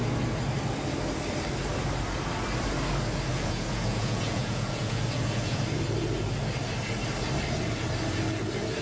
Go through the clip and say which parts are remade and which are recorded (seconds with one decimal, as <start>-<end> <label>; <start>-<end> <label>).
0.0-3.3 recorded; 3.3-5.6 remade; 5.6-8.8 recorded